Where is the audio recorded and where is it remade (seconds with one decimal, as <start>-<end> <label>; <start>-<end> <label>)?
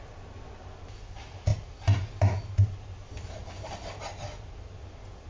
0.0-5.3 recorded